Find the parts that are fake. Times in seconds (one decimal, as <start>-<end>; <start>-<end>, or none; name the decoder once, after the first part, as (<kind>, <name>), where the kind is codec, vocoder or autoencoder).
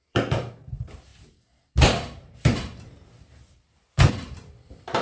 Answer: 0.0-5.0 (vocoder, BigVGAN v2)